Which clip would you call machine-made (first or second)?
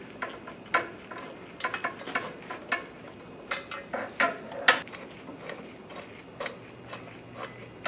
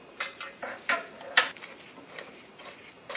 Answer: second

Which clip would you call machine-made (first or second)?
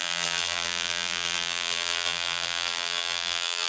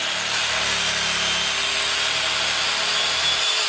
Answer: first